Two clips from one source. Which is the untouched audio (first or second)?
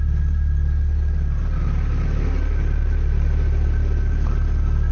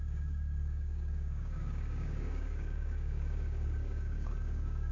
first